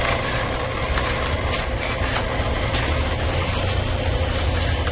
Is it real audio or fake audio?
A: real